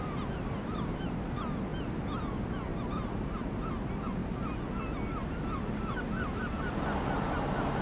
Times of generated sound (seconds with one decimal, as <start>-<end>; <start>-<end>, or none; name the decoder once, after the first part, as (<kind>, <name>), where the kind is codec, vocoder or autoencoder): 2.7-3.4 (vocoder, BigVGAN v2)